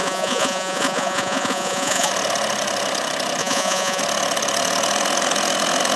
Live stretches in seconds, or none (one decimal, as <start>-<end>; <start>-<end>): 2.1-3.4; 4.0-6.0

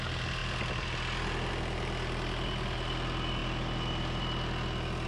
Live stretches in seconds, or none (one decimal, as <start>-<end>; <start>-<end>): 0.0-5.1